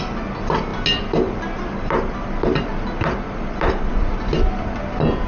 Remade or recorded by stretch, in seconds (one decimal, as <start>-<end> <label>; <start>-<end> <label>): 0.0-5.3 recorded